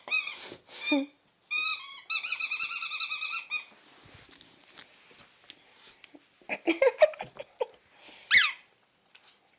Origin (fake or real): real